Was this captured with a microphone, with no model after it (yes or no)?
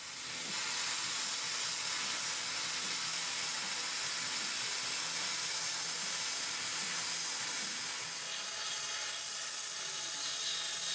yes